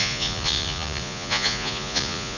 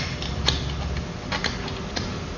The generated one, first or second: first